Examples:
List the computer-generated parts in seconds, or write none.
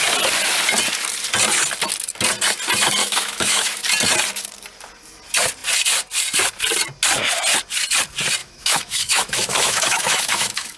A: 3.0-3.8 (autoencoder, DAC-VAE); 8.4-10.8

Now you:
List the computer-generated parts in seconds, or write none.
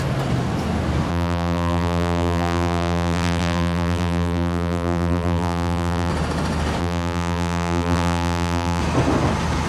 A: 1.1-6.1 (vocoder, BigVGAN v2); 6.8-8.8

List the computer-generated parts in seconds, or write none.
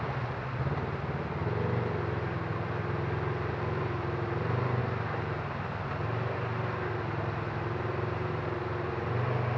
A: none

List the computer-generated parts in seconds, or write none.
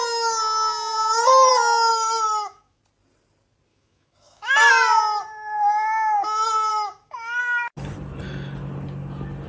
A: 1.9-2.8 (autoencoder, DAC-VAE); 3.7-4.7; 6.7-7.4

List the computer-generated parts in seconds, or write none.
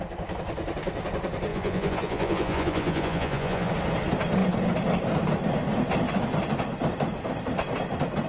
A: 1.5-3.7 (vocoder, Vocos)